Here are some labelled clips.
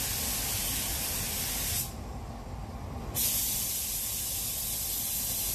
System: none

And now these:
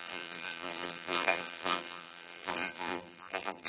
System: vocoder, BigVGAN v2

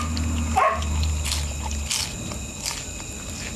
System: none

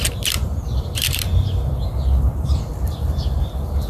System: vocoder, BigVGAN v2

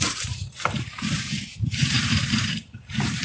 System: vocoder, BigVGAN v2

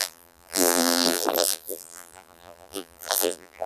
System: vocoder, BigVGAN v2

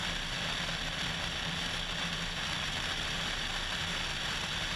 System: none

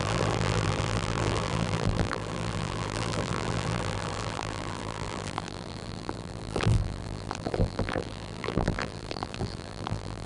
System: vocoder, BigVGAN v2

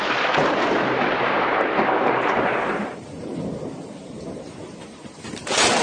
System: vocoder, BigVGAN v2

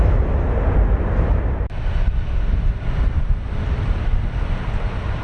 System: none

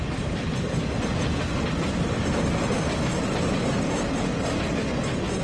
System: none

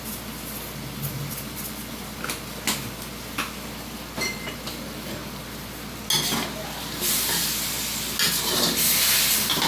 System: none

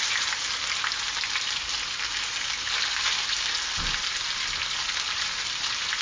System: none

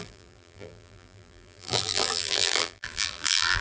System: vocoder, BigVGAN v2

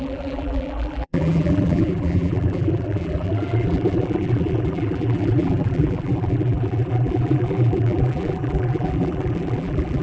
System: vocoder, BigVGAN v2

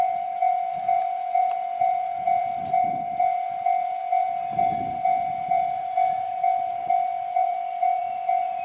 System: vocoder, BigVGAN v2